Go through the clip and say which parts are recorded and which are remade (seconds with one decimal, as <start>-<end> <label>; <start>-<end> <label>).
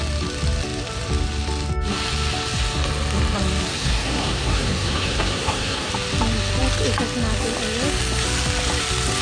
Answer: 0.0-3.7 recorded; 3.7-5.9 remade; 5.9-9.2 recorded